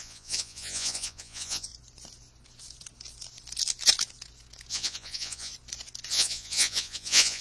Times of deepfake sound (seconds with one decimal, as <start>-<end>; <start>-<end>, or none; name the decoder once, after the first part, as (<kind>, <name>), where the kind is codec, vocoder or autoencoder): 0.0-1.7 (vocoder, Vocos); 4.7-5.5; 6.1-7.4